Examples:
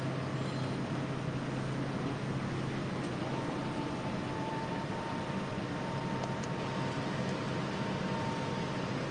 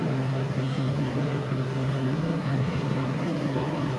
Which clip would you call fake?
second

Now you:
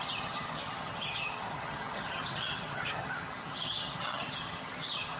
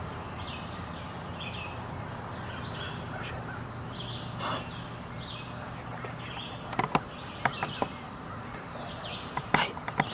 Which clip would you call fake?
first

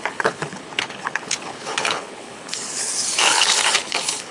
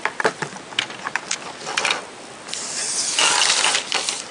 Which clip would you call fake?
first